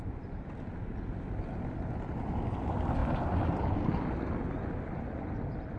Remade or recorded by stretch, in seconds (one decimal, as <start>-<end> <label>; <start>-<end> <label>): 0.0-5.8 recorded